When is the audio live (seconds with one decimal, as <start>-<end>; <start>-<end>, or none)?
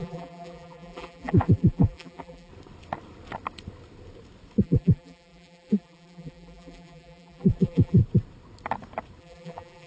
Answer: 2.5-4.6; 8.0-9.2